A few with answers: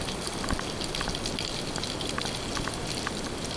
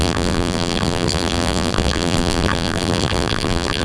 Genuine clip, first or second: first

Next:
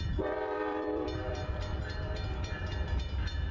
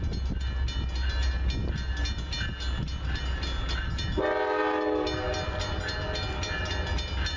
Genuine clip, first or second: second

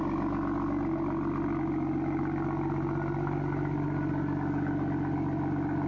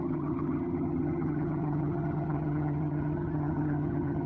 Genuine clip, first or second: first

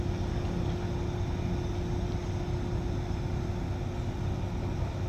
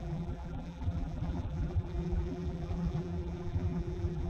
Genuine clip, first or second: first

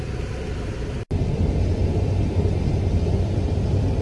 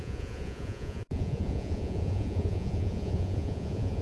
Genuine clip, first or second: first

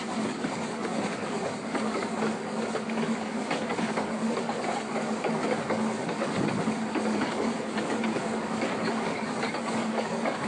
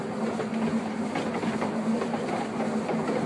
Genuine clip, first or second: second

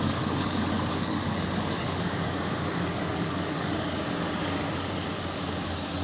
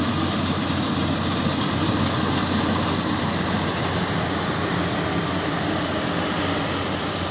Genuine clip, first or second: second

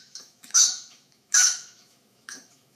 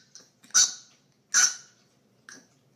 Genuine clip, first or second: second